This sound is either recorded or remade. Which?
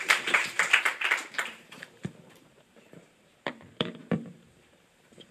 remade